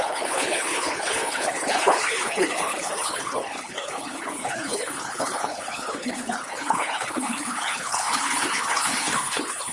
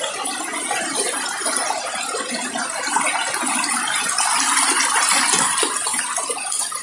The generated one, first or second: first